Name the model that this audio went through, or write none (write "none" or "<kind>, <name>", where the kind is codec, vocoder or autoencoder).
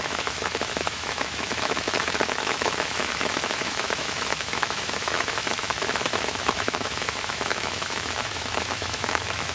autoencoder, DAC-VAE